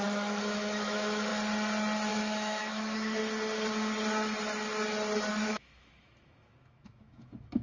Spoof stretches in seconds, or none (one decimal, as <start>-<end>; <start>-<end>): 0.0-1.3; 2.1-3.2; 5.3-7.6